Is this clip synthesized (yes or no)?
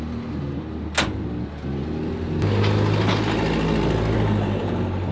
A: no